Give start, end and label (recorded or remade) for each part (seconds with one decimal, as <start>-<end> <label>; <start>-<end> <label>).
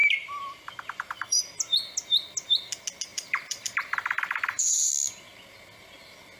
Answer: 0.0-1.4 remade; 1.4-3.1 recorded; 3.1-4.9 remade; 4.9-6.4 recorded